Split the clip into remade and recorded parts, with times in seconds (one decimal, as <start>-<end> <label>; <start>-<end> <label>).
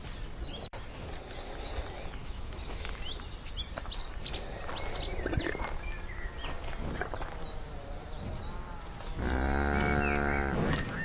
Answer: 0.0-2.2 recorded; 2.2-2.9 remade; 2.9-11.0 recorded